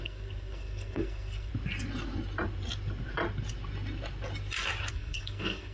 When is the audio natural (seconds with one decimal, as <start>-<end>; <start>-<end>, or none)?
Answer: 1.5-4.9